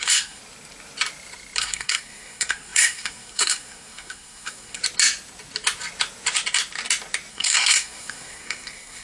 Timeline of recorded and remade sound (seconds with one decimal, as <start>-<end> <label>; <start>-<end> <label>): 0.0-0.4 remade; 0.4-1.6 recorded; 1.6-4.8 remade; 4.8-7.3 recorded; 7.3-9.0 remade